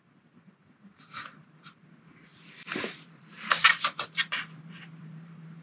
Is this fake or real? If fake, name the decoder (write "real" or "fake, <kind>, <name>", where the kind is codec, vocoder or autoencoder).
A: fake, vocoder, BigVGAN v2